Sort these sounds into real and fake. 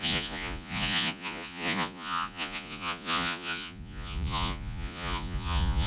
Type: fake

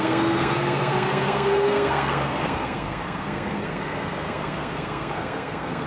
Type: fake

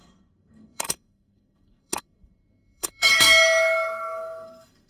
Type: fake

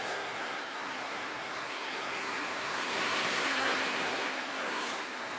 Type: fake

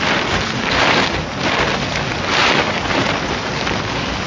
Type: real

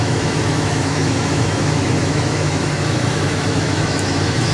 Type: fake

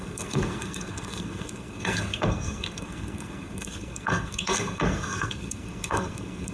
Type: fake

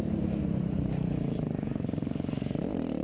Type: fake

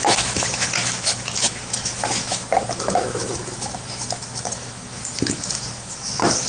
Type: fake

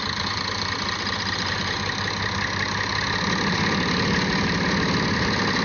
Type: real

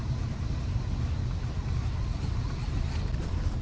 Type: real